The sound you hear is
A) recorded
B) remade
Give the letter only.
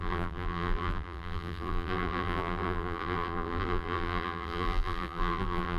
B